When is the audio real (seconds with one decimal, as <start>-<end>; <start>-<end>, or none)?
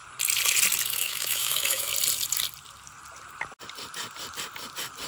0.0-0.9; 1.9-5.1